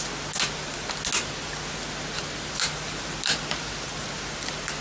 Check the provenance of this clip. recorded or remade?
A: recorded